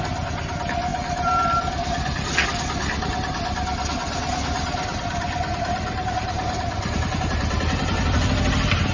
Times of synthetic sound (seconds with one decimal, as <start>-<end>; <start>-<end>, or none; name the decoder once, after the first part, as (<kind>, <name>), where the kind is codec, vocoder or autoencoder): none